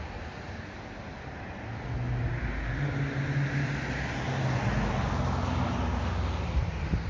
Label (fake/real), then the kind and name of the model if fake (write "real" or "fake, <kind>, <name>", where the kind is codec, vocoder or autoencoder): real